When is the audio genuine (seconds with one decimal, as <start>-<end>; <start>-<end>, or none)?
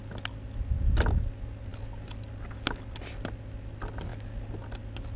0.0-5.2